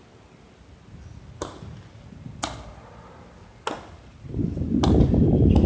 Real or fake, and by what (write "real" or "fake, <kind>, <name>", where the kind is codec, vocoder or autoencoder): real